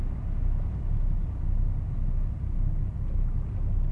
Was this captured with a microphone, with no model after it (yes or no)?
yes